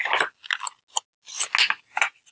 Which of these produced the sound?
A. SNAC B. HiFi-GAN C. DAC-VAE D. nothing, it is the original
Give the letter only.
D